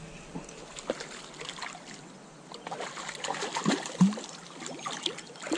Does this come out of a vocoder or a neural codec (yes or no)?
no